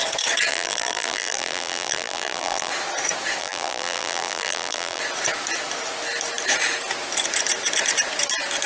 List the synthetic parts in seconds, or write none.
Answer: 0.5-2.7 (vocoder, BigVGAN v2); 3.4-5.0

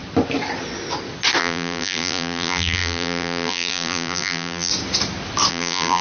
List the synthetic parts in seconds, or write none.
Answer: 1.4-4.7 (vocoder, BigVGAN v2); 5.5-6.0

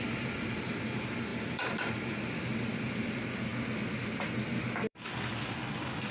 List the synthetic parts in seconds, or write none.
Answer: 0.0-3.5 (vocoder, BigVGAN v2); 4.9-6.1

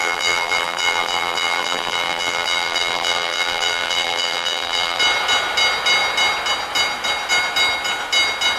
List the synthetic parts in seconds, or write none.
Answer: 0.0-5.0 (vocoder, BigVGAN v2)

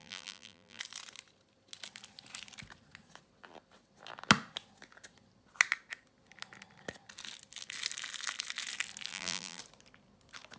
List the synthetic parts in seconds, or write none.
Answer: 0.0-0.8 (vocoder, BigVGAN v2); 9.1-9.6

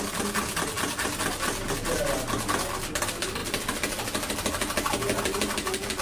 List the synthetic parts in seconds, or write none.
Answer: none